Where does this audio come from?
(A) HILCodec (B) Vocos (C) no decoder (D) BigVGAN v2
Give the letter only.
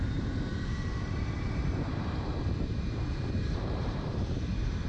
D